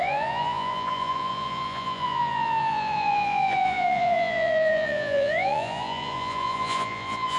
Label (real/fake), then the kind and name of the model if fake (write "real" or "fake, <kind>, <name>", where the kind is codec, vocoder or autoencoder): fake, vocoder, Vocos